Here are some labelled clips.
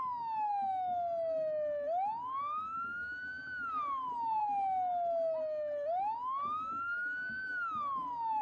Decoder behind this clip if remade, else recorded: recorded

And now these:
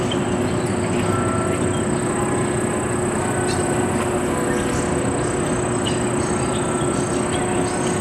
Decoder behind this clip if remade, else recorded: recorded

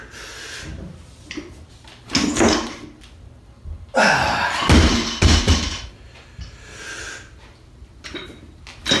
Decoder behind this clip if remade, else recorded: recorded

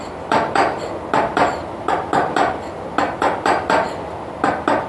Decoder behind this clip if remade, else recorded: recorded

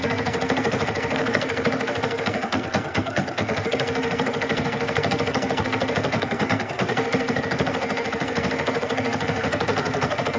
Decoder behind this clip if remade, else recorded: remade, codec, SNAC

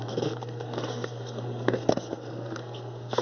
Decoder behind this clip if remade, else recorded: remade, codec, SNAC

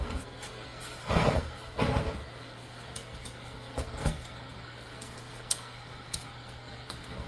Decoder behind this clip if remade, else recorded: remade, codec, SNAC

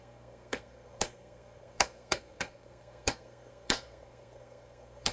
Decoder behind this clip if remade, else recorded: remade, codec, SNAC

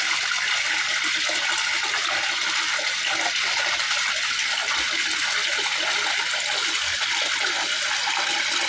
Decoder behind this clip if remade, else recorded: recorded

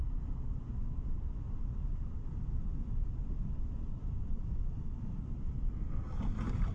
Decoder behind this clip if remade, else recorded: recorded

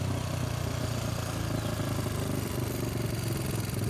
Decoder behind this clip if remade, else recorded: recorded